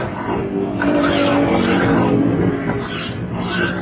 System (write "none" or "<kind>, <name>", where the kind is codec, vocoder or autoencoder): none